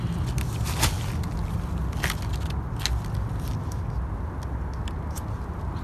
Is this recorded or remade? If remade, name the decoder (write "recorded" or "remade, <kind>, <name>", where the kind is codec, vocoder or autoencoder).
recorded